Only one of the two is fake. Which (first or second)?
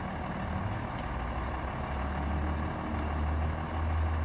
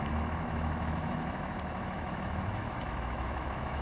second